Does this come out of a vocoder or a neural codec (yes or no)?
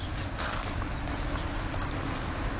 no